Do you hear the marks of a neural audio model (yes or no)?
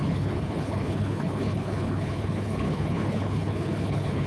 yes